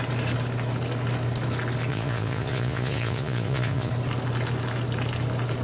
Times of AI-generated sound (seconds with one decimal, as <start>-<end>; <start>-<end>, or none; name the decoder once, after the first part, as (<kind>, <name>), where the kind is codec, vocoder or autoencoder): 1.9-3.9 (vocoder, Vocos)